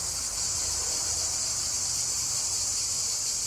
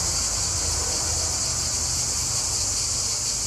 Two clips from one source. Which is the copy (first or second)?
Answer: first